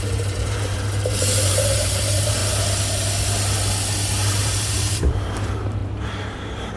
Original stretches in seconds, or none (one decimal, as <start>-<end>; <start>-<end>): 2.4-4.4